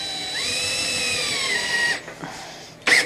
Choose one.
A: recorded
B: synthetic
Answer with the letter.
A